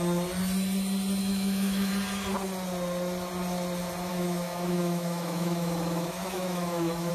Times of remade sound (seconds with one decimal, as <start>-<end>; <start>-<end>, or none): 1.2-1.9; 4.1-7.1